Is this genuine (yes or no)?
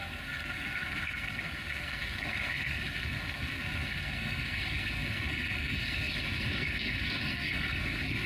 no